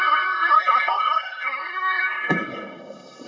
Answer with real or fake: fake